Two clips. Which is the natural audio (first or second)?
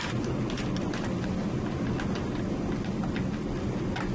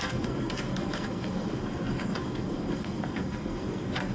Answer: first